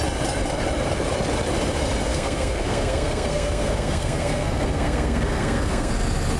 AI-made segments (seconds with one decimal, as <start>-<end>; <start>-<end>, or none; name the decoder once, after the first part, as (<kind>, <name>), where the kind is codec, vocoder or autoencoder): 2.1-5.9 (codec, SNAC)